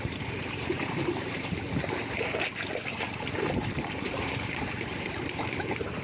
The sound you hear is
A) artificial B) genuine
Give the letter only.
A